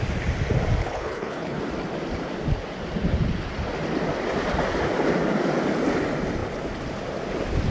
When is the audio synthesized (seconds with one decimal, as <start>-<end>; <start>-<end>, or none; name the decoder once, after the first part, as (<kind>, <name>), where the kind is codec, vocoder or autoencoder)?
0.8-1.6 (codec, HILCodec)